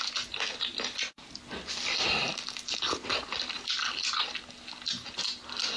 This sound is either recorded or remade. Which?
recorded